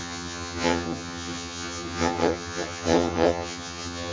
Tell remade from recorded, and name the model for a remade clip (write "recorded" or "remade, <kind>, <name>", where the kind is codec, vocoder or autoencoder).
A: remade, vocoder, HiFi-GAN